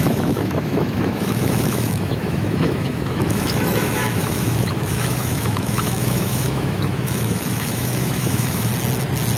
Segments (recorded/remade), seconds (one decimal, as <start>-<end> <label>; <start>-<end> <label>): 0.0-8.7 remade; 8.7-9.4 recorded